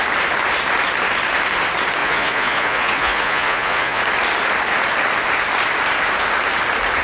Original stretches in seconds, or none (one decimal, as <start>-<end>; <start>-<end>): 0.0-2.0; 4.0-7.0